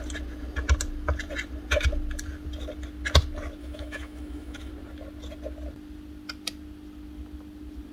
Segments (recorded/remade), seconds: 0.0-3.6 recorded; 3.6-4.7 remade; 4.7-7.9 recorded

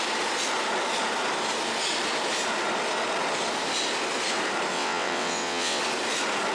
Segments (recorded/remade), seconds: 0.0-4.7 recorded; 4.7-5.8 remade; 5.8-6.5 recorded

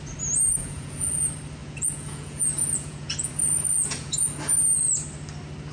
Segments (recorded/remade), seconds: 0.0-0.6 recorded; 0.6-1.1 remade; 1.1-1.6 recorded; 1.6-3.3 remade; 3.3-3.7 recorded; 3.7-4.4 remade; 4.4-5.7 recorded

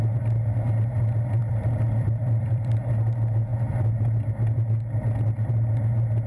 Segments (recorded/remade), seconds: 0.0-1.4 recorded; 1.4-2.9 remade; 2.9-6.3 recorded